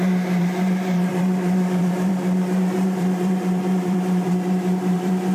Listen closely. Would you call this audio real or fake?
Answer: fake